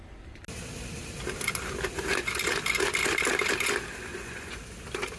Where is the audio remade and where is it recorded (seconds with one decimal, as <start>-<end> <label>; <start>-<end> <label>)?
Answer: 0.0-4.1 recorded; 4.1-4.6 remade; 4.6-5.2 recorded